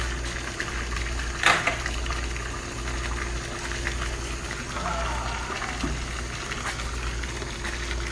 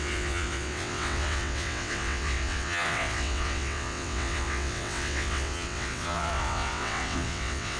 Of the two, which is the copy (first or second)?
second